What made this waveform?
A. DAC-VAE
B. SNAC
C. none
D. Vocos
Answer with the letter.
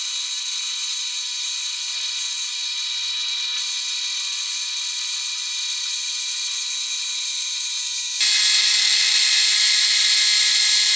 C